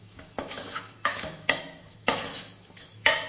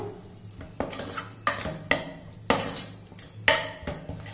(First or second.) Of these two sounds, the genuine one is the second